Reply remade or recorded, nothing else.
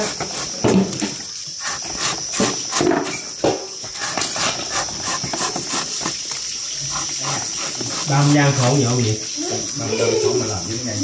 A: recorded